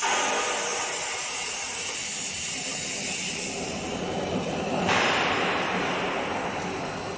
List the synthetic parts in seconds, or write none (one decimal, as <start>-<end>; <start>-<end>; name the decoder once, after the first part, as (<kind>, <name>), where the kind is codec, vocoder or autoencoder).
0.7-5.0 (vocoder, BigVGAN v2)